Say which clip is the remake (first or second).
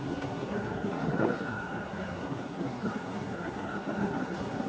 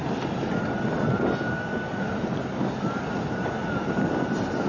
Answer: first